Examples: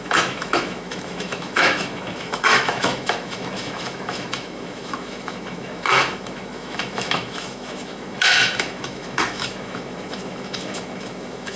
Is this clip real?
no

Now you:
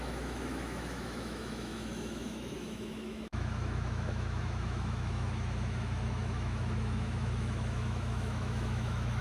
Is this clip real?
no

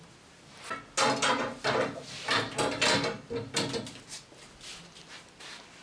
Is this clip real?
yes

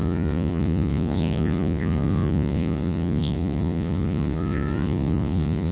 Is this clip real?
no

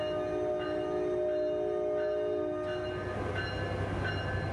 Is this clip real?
yes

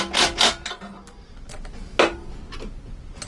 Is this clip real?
yes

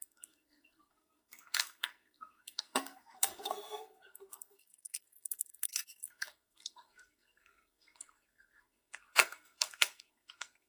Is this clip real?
no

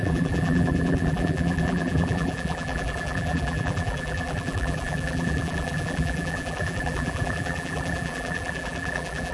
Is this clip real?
no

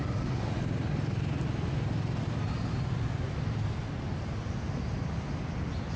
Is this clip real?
yes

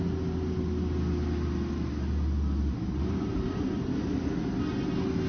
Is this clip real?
yes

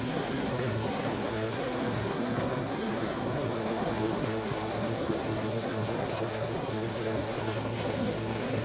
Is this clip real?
no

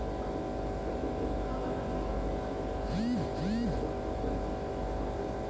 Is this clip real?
yes